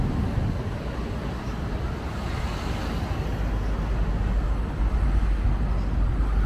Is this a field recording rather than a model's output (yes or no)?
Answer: yes